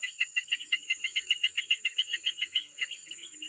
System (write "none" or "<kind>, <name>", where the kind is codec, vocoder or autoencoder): codec, SNAC